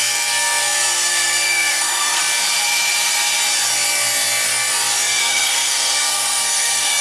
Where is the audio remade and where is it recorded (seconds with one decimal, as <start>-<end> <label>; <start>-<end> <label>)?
0.0-2.2 remade; 2.2-5.2 recorded; 5.2-7.0 remade